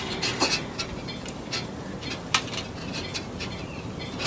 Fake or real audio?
real